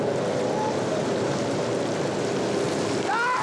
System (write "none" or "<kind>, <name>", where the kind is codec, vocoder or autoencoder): none